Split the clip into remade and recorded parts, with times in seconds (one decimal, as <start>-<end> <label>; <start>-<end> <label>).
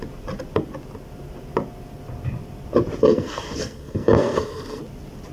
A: 0.0-3.0 recorded; 3.0-4.8 remade; 4.8-5.3 recorded